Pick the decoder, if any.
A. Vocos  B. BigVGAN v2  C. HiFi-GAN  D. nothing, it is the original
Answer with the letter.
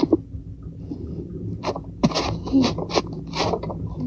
D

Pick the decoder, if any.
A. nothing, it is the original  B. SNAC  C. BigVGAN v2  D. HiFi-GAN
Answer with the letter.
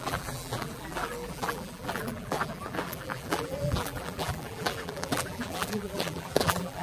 C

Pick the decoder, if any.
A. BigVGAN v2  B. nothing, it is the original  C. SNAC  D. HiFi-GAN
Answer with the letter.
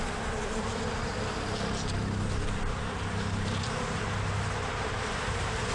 A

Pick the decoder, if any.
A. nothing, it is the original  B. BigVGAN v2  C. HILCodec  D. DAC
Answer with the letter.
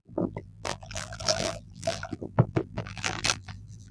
B